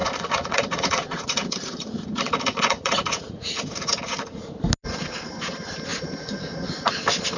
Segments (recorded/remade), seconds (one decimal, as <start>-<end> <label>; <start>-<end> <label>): 0.0-4.4 remade; 4.4-5.9 recorded; 5.9-6.9 remade; 6.9-7.4 recorded